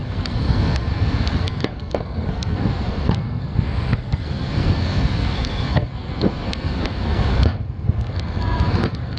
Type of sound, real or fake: fake